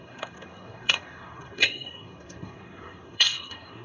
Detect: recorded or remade remade